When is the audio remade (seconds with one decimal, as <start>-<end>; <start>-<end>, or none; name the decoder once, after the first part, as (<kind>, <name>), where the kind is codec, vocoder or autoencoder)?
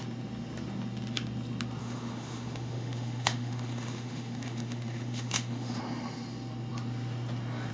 1.8-5.8 (autoencoder, DAC-VAE)